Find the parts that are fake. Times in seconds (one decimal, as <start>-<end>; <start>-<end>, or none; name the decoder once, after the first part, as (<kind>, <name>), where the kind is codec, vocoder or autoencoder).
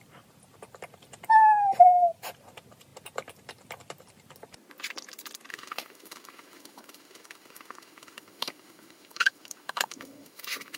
5.5-10.8 (autoencoder, DAC-VAE)